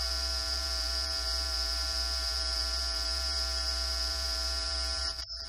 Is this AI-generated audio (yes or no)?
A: yes